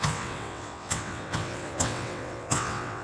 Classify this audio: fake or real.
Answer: fake